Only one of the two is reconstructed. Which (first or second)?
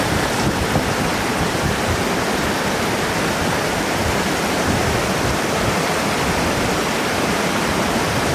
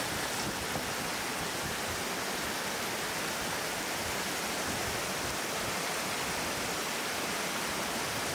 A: first